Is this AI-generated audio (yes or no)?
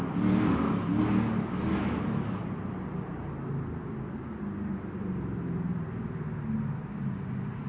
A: no